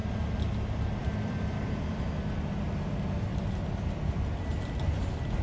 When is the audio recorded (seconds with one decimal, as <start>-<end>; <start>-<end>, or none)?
0.0-1.0; 2.1-3.3; 4.1-5.4